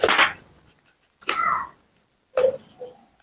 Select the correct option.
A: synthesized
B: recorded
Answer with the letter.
B